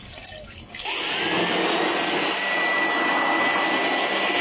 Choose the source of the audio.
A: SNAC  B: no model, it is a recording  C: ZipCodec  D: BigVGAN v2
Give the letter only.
B